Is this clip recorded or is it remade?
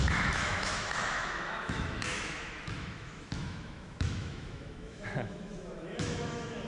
remade